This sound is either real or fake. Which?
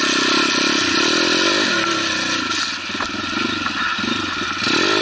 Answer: real